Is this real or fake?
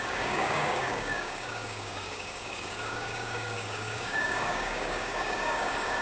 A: fake